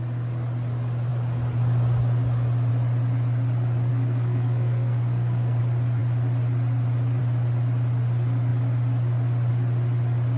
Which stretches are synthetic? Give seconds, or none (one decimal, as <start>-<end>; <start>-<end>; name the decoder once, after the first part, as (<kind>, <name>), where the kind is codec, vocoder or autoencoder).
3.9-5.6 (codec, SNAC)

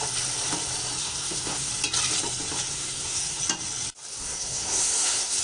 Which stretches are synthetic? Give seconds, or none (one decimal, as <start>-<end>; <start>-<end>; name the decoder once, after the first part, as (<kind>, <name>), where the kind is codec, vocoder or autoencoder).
1.0-1.7 (codec, SNAC); 2.7-3.4; 4.1-5.4

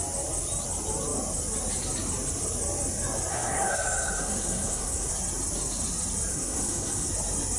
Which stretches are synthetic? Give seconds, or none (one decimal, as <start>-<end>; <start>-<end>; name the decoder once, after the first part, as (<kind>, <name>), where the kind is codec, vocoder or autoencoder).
3.3-5.1 (codec, SNAC); 6.3-7.1

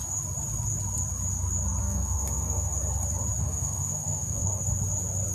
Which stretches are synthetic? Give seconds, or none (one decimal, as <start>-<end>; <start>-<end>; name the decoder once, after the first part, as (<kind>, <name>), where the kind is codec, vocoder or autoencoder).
1.8-2.7 (codec, SNAC); 3.4-4.6